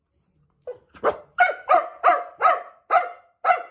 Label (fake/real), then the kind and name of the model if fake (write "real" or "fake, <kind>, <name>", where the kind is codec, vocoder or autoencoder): real